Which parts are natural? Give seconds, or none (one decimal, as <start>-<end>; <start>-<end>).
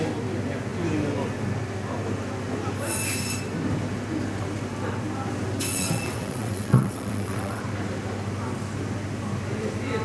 0.0-5.7; 7.6-10.0